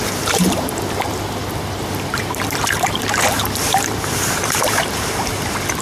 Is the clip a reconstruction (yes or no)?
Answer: yes